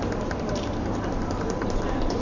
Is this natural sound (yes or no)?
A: yes